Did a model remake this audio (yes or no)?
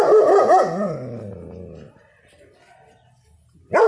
no